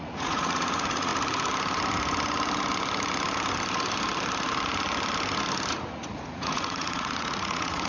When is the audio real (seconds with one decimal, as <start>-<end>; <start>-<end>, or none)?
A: 1.1-5.7